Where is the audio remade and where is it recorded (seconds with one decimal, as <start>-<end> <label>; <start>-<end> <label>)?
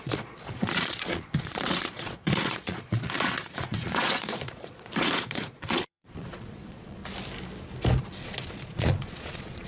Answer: 0.0-7.0 remade; 7.0-8.0 recorded; 8.0-9.7 remade